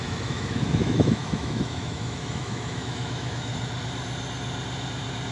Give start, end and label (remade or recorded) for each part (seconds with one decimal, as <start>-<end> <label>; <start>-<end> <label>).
0.0-3.5 remade; 3.5-5.3 recorded

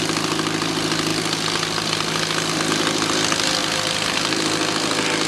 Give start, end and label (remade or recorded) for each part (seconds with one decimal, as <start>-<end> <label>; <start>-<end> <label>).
0.0-3.6 recorded; 3.6-4.4 remade; 4.4-5.3 recorded

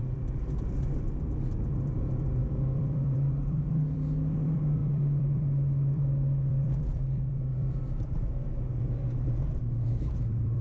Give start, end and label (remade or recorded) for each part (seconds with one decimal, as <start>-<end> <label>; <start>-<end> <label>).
0.0-10.6 remade

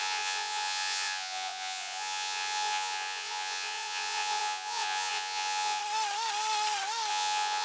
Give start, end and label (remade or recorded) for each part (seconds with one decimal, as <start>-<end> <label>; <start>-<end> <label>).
0.0-5.8 remade; 5.8-7.1 recorded; 7.1-7.6 remade